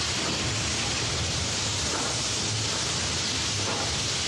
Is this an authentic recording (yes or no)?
yes